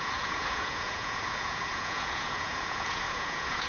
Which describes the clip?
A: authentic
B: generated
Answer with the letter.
B